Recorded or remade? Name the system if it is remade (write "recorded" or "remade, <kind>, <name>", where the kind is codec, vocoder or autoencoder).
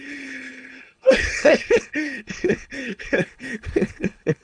remade, codec, HILCodec